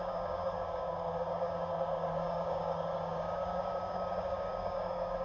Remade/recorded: remade